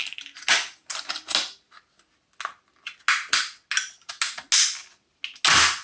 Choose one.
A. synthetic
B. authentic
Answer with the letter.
B